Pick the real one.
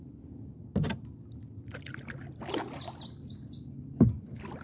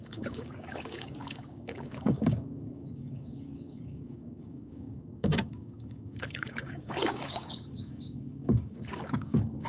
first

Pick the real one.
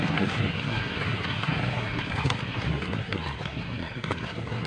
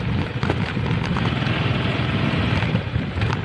second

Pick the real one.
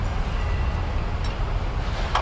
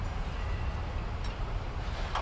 first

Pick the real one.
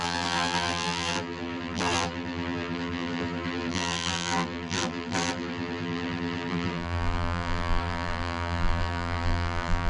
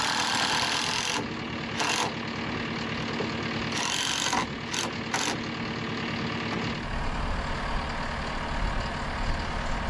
second